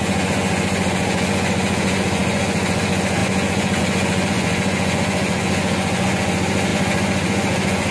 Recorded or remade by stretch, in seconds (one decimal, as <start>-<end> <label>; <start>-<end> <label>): 0.0-7.9 remade